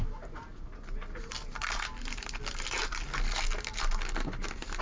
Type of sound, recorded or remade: recorded